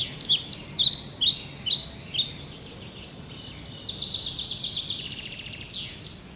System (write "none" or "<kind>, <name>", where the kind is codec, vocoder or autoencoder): none